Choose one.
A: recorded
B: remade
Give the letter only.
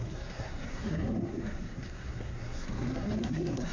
B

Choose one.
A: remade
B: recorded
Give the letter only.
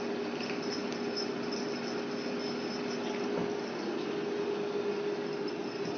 B